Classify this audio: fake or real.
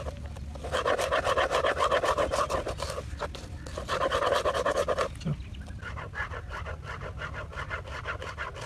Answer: real